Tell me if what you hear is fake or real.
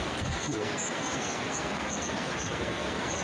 fake